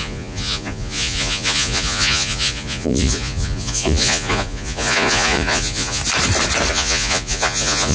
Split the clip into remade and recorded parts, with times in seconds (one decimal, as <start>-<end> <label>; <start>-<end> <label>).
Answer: 0.0-6.0 remade; 6.0-6.7 recorded; 6.7-7.9 remade